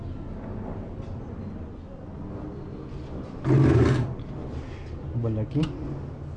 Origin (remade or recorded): recorded